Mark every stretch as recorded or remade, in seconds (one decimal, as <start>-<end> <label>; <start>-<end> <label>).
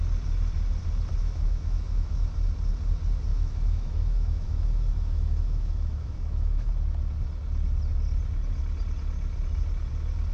0.0-1.2 recorded; 1.2-2.2 remade; 2.2-3.3 recorded; 3.3-6.7 remade; 6.7-10.3 recorded